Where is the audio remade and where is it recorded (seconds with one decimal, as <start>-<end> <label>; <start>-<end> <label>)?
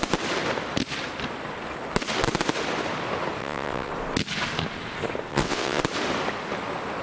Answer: 0.0-3.4 recorded; 3.4-3.9 remade; 3.9-5.3 recorded; 5.3-5.8 remade; 5.8-7.0 recorded